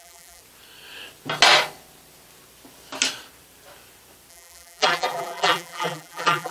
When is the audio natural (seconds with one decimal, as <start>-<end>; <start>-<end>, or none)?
0.4-4.3